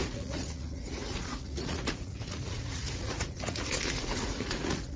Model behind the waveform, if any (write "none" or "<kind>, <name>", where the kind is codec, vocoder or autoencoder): vocoder, Vocos